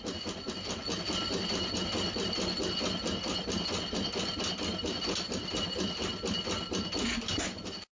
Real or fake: real